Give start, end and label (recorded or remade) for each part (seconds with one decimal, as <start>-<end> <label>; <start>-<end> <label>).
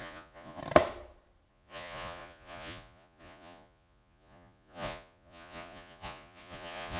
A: 0.0-0.6 remade; 0.6-1.5 recorded; 1.5-7.0 remade